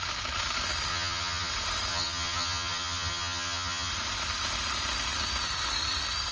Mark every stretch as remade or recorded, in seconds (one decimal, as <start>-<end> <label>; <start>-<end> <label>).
0.0-0.9 recorded; 0.9-1.5 remade; 1.5-1.9 recorded; 1.9-3.9 remade; 3.9-6.3 recorded